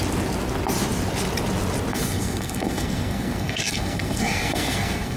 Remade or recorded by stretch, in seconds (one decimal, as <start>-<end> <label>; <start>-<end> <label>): 0.0-1.9 recorded; 1.9-5.2 remade